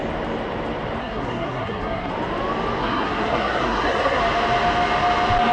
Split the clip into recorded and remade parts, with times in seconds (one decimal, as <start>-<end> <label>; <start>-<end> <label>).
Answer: 0.0-1.0 recorded; 1.0-2.1 remade; 2.1-2.8 recorded; 2.8-4.2 remade; 4.2-5.5 recorded